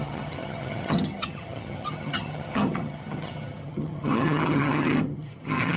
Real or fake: fake